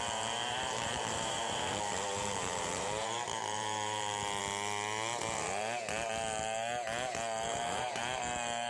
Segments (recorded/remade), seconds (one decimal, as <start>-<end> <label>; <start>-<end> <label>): 0.0-0.4 recorded; 0.4-4.4 remade; 4.4-7.5 recorded; 7.5-8.0 remade; 8.0-8.7 recorded